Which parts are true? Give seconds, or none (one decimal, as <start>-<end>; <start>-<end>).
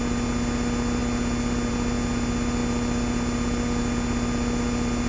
0.0-5.1